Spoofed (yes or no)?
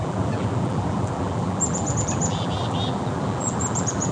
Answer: yes